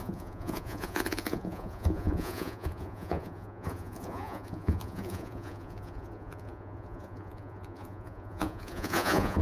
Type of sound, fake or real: fake